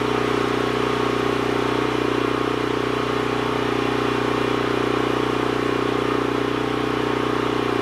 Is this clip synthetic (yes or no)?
no